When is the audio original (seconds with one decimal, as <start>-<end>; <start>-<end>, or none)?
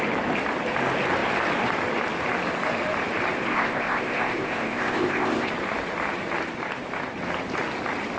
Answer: 0.0-3.5; 5.5-8.2